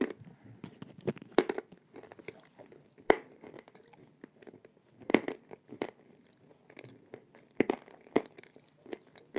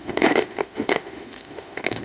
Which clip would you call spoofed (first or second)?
second